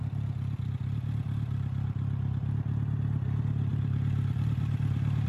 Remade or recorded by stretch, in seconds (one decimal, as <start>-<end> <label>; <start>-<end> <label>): 0.0-3.7 recorded; 3.7-5.3 remade